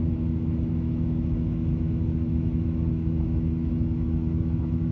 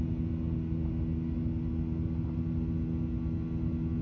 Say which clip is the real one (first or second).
second